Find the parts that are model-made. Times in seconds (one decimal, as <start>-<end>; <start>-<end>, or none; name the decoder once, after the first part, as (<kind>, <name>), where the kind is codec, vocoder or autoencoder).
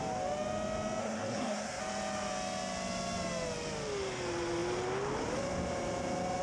1.0-1.8 (codec, SNAC)